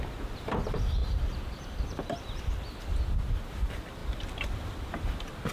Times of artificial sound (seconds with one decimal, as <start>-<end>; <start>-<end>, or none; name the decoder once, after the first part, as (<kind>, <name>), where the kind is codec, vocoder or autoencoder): 1.0-2.2 (vocoder, BigVGAN v2); 4.0-5.5